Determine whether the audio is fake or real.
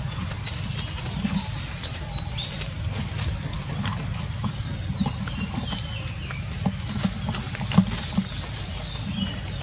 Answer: real